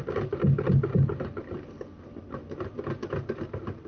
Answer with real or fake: real